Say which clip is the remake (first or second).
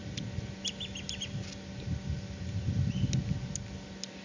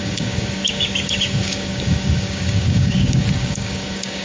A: second